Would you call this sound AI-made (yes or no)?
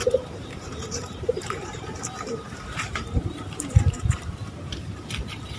yes